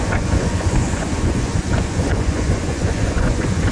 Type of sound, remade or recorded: remade